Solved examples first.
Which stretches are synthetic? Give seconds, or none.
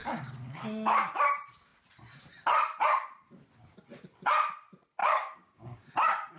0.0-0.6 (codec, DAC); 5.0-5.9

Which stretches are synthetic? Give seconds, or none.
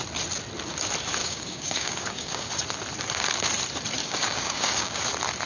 1.2-2.5 (codec, DAC); 4.0-5.0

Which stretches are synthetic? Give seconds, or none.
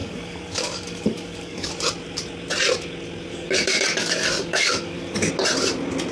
0.0-1.7 (codec, DAC); 3.3-5.3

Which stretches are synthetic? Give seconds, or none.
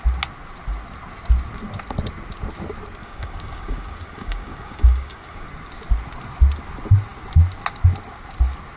3.0-5.5 (codec, DAC)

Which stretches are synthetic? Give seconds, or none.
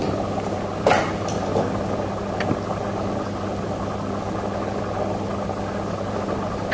none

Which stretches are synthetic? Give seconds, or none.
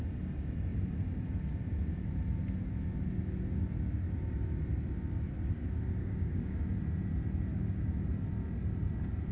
6.0-6.8 (codec, DAC); 7.5-8.1